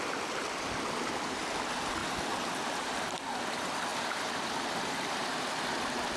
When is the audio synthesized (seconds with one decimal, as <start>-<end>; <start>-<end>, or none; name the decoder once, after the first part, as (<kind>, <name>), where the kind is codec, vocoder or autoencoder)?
2.0-3.4 (vocoder, BigVGAN v2); 3.9-5.5